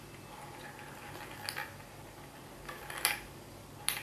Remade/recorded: recorded